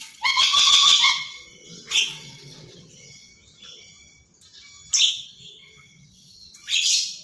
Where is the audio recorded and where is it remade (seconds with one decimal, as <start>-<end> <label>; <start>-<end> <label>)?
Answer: 0.0-3.3 remade; 3.3-5.1 recorded; 5.1-7.2 remade